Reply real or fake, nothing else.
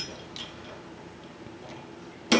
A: real